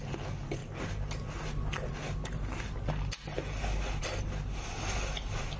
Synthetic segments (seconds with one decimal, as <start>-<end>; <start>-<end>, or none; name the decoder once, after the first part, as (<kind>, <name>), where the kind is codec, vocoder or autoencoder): none